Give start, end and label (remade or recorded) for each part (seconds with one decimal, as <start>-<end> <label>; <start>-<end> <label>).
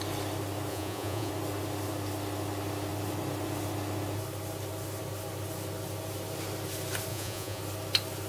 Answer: 0.0-0.7 recorded; 0.7-1.3 remade; 1.3-7.1 recorded; 7.1-7.6 remade; 7.6-8.3 recorded